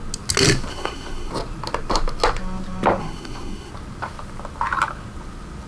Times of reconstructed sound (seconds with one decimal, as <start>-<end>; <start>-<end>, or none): 0.7-1.3; 3.0-3.7